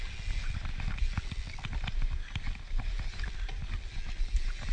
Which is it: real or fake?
real